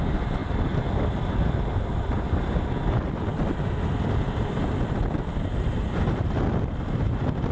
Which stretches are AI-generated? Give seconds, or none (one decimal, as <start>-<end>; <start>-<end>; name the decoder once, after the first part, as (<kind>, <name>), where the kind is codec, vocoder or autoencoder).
0.0-0.4 (vocoder, BigVGAN v2); 0.9-7.5